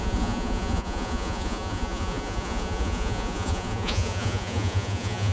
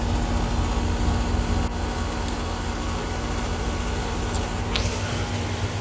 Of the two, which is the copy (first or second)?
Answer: first